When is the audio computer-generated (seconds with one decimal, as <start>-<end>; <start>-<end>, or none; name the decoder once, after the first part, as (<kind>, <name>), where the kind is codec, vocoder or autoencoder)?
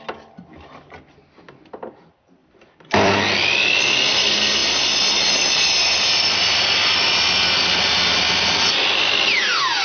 2.4-3.1 (vocoder, BigVGAN v2)